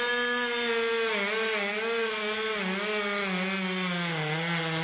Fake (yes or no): no